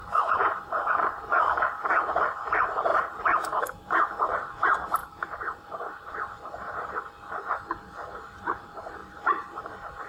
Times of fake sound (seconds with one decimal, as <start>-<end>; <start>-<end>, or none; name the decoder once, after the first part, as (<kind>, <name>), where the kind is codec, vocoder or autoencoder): 0.0-1.9 (vocoder, BigVGAN v2); 2.9-4.3; 5.0-6.1